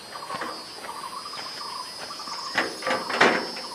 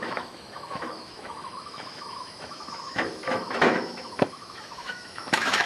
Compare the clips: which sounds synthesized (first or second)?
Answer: second